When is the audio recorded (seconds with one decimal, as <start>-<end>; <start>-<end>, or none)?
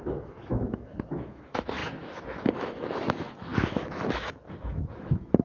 none